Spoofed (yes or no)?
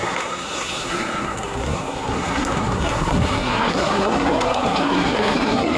yes